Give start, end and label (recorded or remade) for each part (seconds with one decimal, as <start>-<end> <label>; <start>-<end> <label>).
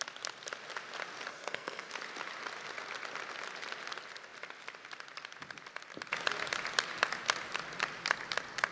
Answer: 0.0-1.3 recorded; 1.3-1.9 remade; 1.9-8.7 recorded